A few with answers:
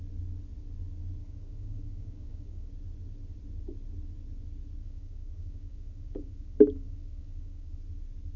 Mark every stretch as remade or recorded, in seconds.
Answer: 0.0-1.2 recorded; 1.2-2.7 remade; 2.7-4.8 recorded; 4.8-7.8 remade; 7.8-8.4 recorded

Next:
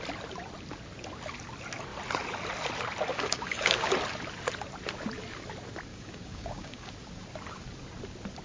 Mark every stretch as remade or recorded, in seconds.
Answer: 0.0-3.1 recorded; 3.1-3.9 remade; 3.9-5.9 recorded; 5.9-6.9 remade; 6.9-8.4 recorded

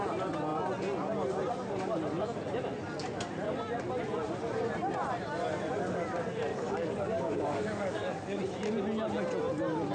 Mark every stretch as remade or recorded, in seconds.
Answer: 0.0-6.5 recorded; 6.5-8.4 remade; 8.4-9.9 recorded

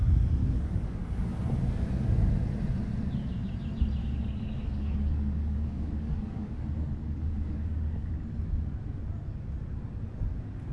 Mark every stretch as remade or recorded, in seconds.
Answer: 0.0-0.4 recorded; 0.4-1.1 remade; 1.1-1.6 recorded; 1.6-2.2 remade; 2.2-4.0 recorded; 4.0-8.1 remade; 8.1-10.7 recorded

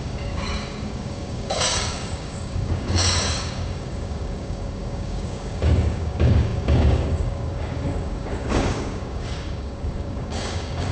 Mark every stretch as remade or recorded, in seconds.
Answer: 0.0-10.9 remade

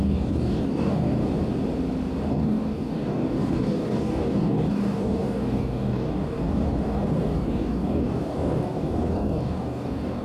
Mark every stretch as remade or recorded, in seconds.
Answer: 0.0-1.2 remade; 1.2-2.3 recorded; 2.3-10.2 remade

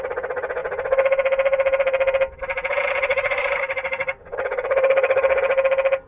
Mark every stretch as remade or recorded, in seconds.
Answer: 0.0-3.1 recorded; 3.1-5.4 remade; 5.4-6.1 recorded

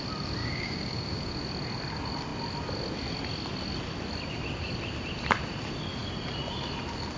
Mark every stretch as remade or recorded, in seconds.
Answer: 0.0-0.4 recorded; 0.4-1.3 remade; 1.3-7.2 recorded